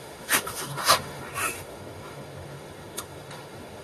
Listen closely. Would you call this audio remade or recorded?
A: remade